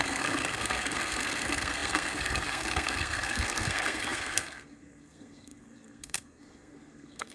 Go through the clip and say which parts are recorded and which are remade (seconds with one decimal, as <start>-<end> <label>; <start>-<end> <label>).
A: 0.0-7.3 remade